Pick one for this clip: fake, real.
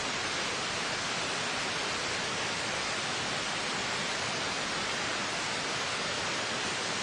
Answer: real